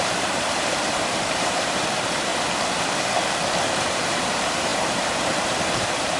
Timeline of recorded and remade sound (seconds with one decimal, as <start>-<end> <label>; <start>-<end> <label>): 0.0-2.3 remade; 2.3-3.8 recorded; 3.8-6.2 remade